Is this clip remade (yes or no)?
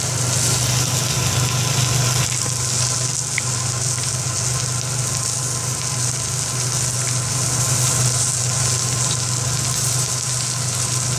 no